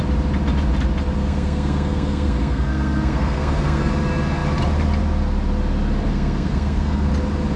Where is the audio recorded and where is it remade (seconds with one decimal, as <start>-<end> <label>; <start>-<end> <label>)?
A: 0.0-1.2 recorded; 1.2-3.9 remade; 3.9-6.1 recorded; 6.1-7.1 remade; 7.1-7.6 recorded